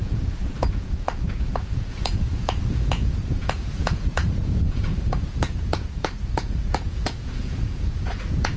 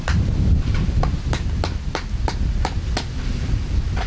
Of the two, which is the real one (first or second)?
second